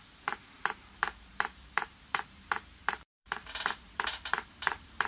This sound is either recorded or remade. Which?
remade